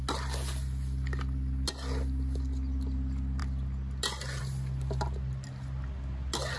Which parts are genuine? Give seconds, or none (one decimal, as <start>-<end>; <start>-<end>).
0.0-6.6